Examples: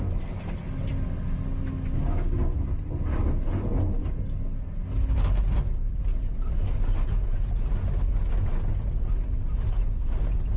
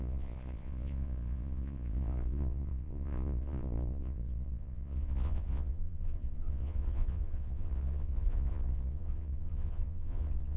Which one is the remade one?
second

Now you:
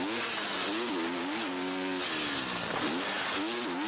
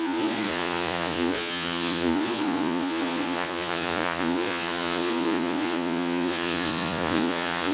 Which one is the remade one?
second